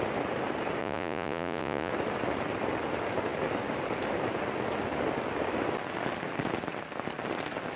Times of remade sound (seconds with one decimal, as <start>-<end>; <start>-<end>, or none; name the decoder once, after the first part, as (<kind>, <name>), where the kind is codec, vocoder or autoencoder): 0.8-1.9 (vocoder, Vocos)